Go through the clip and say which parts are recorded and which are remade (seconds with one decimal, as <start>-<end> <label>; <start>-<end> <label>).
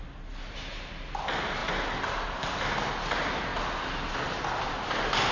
0.0-5.3 recorded